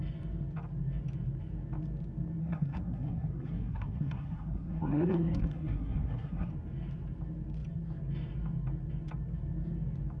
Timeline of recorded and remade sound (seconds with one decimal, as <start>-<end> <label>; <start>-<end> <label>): 0.0-2.4 recorded; 2.4-6.5 remade; 6.5-10.2 recorded